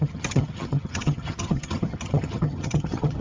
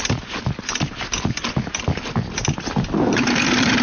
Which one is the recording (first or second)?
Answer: second